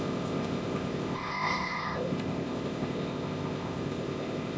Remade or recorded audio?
remade